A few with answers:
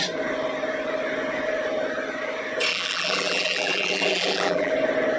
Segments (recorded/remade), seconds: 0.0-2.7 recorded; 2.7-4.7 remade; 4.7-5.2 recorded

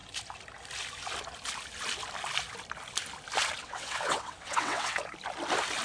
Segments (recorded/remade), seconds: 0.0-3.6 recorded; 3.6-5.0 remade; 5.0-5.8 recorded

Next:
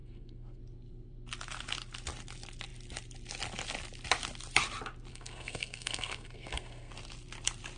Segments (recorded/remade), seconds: 0.0-0.6 remade; 0.6-5.1 recorded; 5.1-6.9 remade; 6.9-7.8 recorded

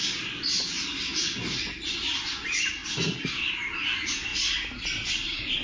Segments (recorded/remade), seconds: 0.0-1.1 remade; 1.1-2.4 recorded; 2.4-2.8 remade; 2.8-3.5 recorded; 3.5-4.3 remade; 4.3-5.1 recorded; 5.1-5.6 remade

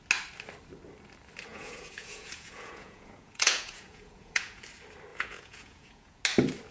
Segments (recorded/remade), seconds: 0.0-1.5 recorded; 1.5-4.6 remade; 4.6-5.1 recorded; 5.1-6.2 remade; 6.2-6.7 recorded

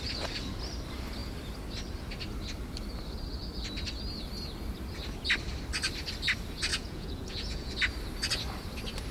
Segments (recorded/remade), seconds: 0.0-6.7 recorded; 6.7-7.7 remade; 7.7-9.1 recorded

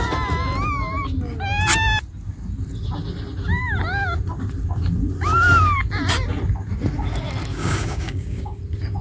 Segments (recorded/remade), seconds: 0.0-7.5 recorded; 7.5-8.6 remade; 8.6-9.0 recorded